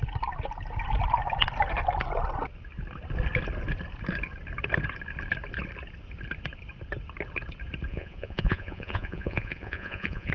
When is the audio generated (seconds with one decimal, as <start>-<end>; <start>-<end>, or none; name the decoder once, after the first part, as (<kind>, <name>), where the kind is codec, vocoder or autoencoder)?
7.9-10.3 (vocoder, Vocos)